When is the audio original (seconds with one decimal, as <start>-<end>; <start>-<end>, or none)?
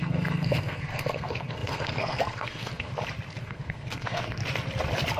2.9-3.4; 4.4-5.2